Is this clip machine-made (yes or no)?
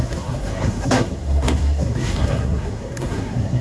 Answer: yes